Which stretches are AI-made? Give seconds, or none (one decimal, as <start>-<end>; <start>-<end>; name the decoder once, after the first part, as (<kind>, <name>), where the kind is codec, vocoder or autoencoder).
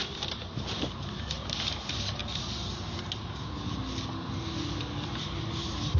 0.0-2.2 (vocoder, BigVGAN v2); 5.2-6.0